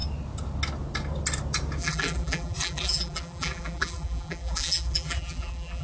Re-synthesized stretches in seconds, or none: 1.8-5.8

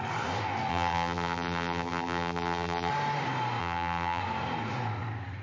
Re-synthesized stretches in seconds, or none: 0.7-2.9; 3.6-4.2